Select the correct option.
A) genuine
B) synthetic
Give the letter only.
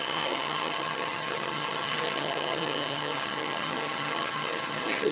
B